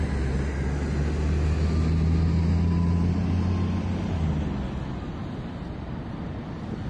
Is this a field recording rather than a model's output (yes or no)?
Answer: yes